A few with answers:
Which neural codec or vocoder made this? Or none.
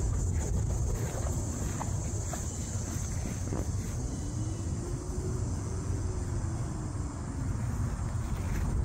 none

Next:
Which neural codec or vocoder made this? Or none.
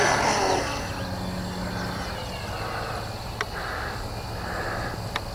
none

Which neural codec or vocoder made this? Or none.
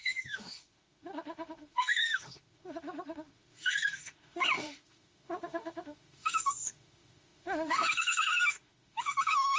autoencoder, DAC-VAE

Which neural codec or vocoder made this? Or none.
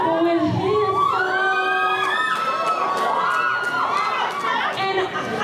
none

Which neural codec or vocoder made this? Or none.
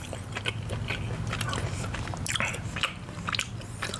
none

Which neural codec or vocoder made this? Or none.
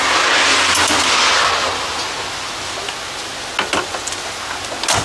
none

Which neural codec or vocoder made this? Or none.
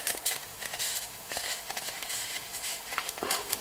autoencoder, DAC-VAE